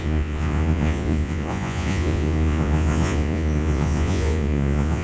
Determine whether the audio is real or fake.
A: fake